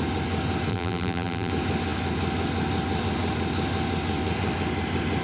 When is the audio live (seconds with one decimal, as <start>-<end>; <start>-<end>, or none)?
0.0-0.7; 1.5-5.2